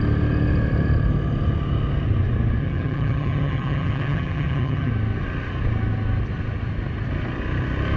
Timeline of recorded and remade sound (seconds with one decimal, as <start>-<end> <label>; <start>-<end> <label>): 0.0-2.6 recorded; 2.6-4.9 remade; 4.9-8.0 recorded